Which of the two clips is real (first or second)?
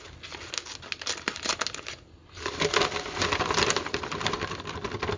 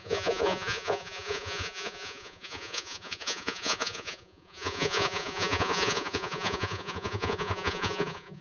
first